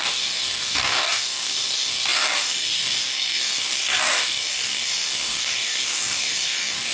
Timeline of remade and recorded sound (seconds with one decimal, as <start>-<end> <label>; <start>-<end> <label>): 0.0-6.9 remade